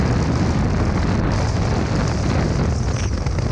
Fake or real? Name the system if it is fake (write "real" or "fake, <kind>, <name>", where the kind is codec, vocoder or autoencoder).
real